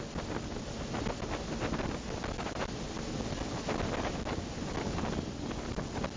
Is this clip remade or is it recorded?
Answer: recorded